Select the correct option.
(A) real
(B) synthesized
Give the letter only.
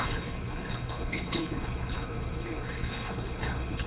B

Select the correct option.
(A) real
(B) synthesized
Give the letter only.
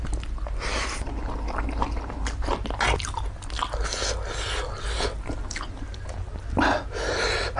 A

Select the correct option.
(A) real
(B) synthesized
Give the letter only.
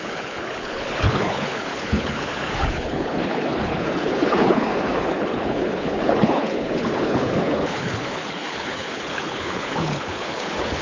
B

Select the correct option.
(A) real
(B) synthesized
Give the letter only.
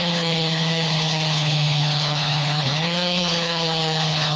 B